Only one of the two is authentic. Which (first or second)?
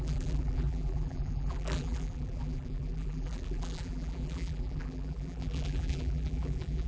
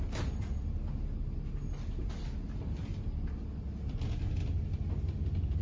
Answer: second